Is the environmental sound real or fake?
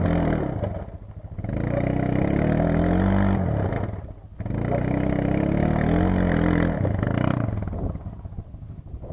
real